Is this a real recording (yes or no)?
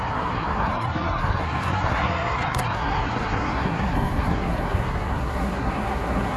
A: no